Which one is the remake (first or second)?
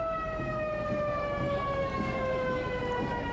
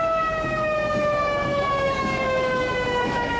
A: second